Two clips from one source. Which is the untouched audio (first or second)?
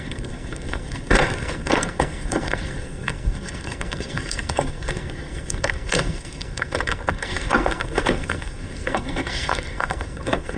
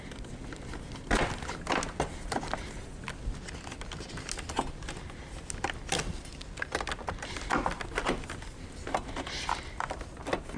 second